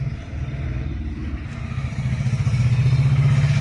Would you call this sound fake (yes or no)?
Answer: no